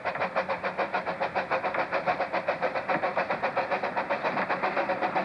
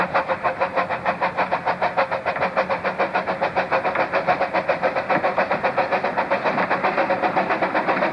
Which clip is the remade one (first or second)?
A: first